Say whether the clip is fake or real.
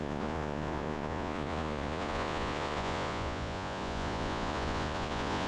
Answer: fake